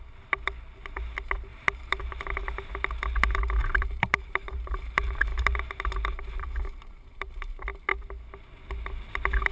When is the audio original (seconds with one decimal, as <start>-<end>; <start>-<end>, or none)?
0.0-1.5; 2.2-3.6; 7.5-9.5